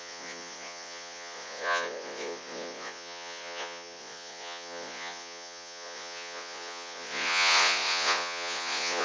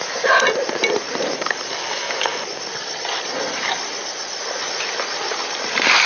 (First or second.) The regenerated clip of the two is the first